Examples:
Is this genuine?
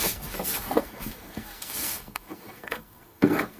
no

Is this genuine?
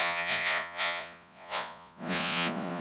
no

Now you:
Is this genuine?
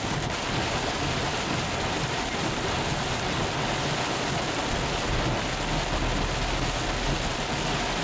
yes